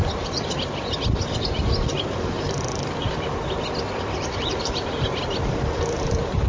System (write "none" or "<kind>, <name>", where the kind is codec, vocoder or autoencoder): vocoder, BigVGAN v2